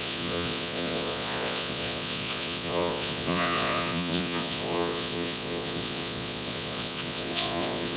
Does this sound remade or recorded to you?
remade